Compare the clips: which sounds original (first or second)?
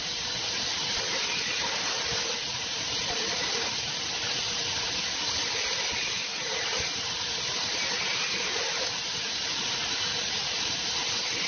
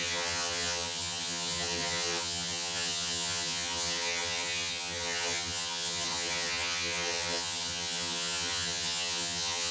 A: first